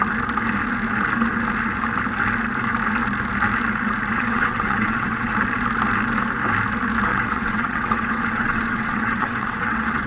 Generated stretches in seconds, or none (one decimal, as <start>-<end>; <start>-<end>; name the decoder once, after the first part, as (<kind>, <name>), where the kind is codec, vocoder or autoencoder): 4.1-5.3 (vocoder, WaveNeXt); 7.1-10.1